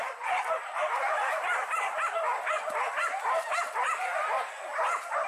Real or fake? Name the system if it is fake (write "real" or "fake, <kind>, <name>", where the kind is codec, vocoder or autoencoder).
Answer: fake, vocoder, BigVGAN v2